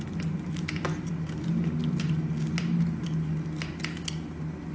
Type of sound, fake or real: real